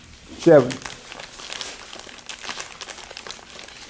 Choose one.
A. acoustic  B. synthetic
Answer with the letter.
A